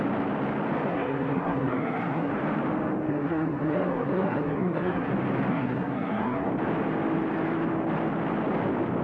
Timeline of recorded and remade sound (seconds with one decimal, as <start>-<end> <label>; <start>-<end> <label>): 0.0-0.9 recorded; 0.9-2.3 remade; 2.3-3.1 recorded; 3.1-5.1 remade; 5.1-5.5 recorded; 5.5-6.5 remade; 6.5-9.0 recorded